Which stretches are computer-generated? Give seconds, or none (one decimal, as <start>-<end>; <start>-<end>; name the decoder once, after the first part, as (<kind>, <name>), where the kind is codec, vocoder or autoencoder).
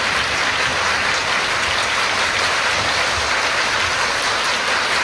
none